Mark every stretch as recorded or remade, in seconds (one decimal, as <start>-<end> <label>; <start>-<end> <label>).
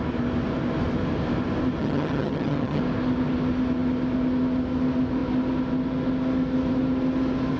0.0-1.8 recorded; 1.8-2.8 remade; 2.8-7.6 recorded